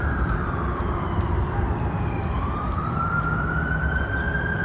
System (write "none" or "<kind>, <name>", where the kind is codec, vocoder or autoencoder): vocoder, BigVGAN v2